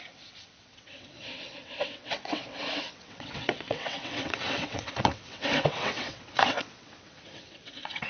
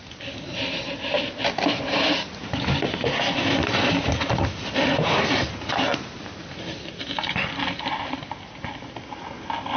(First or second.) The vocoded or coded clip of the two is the first